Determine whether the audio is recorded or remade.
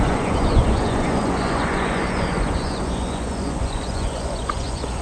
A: remade